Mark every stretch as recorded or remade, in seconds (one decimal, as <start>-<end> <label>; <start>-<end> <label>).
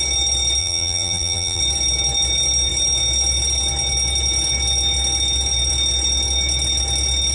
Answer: 0.0-0.6 recorded; 0.6-1.6 remade; 1.6-7.3 recorded